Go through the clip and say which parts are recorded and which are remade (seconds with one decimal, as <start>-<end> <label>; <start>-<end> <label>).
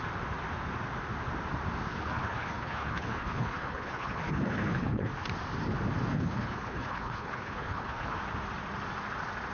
0.0-1.9 recorded; 1.9-5.1 remade; 5.1-6.1 recorded; 6.1-8.2 remade; 8.2-9.5 recorded